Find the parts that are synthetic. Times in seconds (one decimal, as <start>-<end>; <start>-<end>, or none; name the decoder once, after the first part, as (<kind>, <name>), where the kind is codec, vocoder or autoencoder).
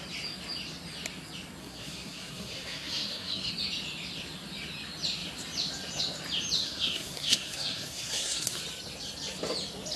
1.6-3.5 (codec, SNAC); 6.6-8.6